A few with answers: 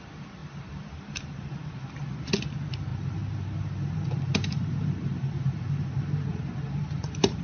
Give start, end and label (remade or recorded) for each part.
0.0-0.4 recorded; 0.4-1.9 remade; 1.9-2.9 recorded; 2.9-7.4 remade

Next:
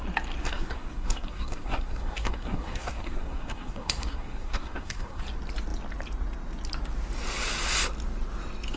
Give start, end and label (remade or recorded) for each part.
0.0-0.4 recorded; 0.4-5.2 remade; 5.2-8.8 recorded

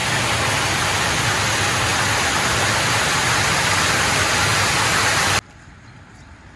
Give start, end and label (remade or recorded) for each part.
0.0-6.6 recorded

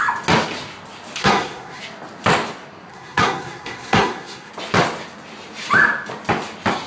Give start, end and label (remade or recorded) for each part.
0.0-1.2 recorded; 1.2-1.8 remade; 1.8-2.9 recorded; 2.9-4.5 remade; 4.5-6.9 recorded

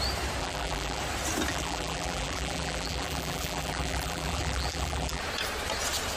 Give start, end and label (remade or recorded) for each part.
0.0-0.4 recorded; 0.4-1.0 remade; 1.0-1.5 recorded; 1.5-5.2 remade; 5.2-6.2 recorded